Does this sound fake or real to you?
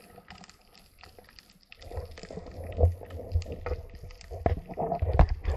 real